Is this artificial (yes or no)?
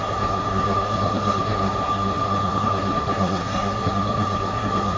yes